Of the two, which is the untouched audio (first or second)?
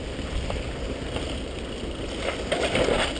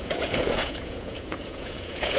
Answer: first